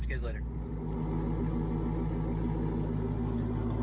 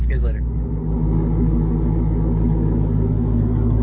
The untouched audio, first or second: first